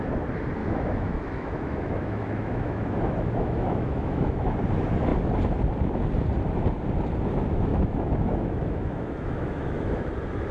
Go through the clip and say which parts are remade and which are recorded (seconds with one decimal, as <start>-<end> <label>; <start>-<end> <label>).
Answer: 0.0-0.6 recorded; 0.6-4.5 remade; 4.5-7.7 recorded; 7.7-10.1 remade; 10.1-10.5 recorded